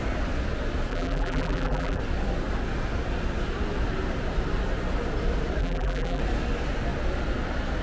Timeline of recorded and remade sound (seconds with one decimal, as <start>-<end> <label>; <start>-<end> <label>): 0.0-0.9 recorded; 0.9-2.0 remade; 2.0-5.6 recorded; 5.6-6.2 remade; 6.2-7.8 recorded